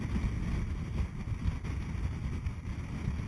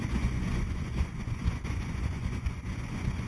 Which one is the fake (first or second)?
second